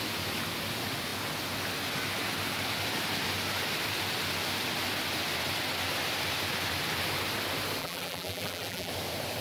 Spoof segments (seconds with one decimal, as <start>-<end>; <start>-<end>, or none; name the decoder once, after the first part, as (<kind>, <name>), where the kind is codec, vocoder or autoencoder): 7.8-8.9 (vocoder, BigVGAN v2)